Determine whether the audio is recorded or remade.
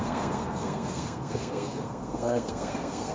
remade